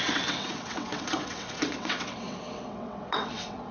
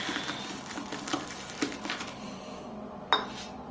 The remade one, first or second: first